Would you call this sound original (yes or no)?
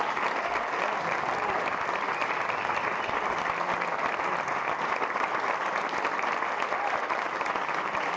yes